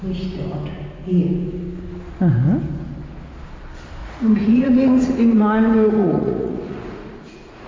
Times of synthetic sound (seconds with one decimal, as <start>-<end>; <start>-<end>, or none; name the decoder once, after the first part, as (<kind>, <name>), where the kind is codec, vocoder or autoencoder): 4.0-7.7 (vocoder, Vocos)